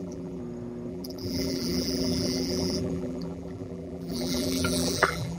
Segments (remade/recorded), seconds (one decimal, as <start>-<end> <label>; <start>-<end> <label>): 0.0-0.4 remade; 0.4-0.9 recorded; 0.9-5.4 remade